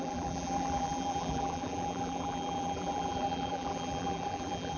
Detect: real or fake fake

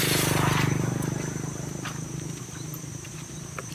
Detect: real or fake fake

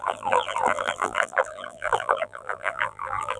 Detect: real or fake fake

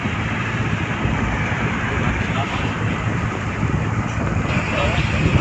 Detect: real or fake fake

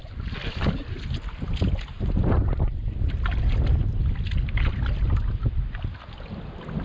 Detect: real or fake real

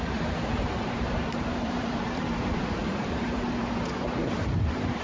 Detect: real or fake fake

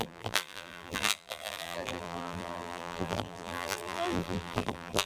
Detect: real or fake fake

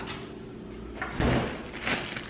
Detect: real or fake real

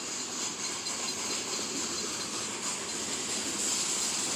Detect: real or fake real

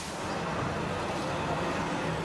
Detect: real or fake real